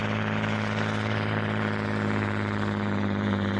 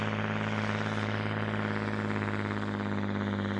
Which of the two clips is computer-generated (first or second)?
first